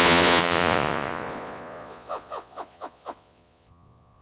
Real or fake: fake